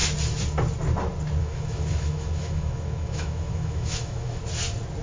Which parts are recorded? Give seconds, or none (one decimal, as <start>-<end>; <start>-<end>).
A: 0.0-1.4; 4.4-5.0